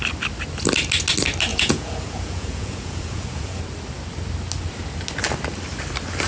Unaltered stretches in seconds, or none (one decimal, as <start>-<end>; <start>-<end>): 0.0-1.5; 3.6-6.3